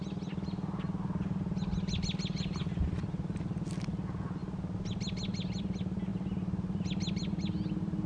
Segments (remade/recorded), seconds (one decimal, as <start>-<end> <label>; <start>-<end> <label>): 0.0-8.1 recorded